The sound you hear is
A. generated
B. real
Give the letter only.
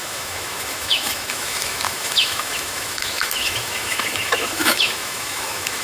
A